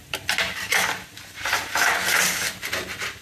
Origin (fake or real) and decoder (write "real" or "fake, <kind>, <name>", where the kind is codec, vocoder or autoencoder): real